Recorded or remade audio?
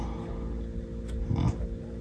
recorded